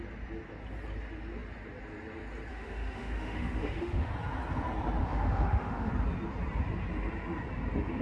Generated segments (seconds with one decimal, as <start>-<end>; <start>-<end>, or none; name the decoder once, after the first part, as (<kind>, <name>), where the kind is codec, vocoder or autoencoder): 2.5-4.1 (autoencoder, DAC-VAE); 5.0-5.9